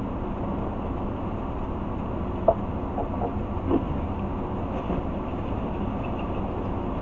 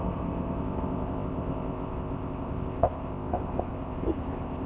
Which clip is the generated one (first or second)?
second